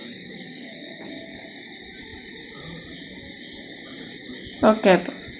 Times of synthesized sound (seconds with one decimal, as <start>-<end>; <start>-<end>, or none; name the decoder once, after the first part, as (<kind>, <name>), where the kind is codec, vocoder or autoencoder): 0.0-1.4 (codec, DAC)